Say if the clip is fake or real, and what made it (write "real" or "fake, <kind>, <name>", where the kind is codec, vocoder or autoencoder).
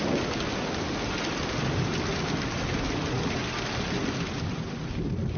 real